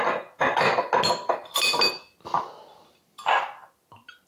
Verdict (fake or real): real